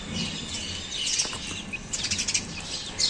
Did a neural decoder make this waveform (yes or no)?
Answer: no